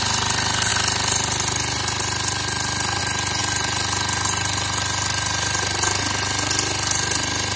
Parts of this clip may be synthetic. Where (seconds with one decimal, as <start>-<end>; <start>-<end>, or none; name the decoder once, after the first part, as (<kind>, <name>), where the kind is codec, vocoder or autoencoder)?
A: none